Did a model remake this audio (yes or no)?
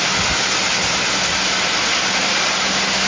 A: no